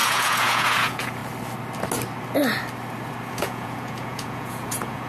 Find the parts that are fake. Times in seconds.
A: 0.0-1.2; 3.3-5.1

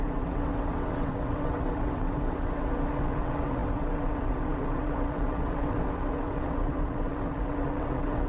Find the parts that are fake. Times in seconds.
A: 0.0-8.3

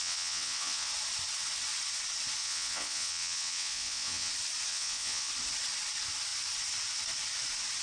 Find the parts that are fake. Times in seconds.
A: 0.0-0.9; 2.4-4.3; 4.7-5.3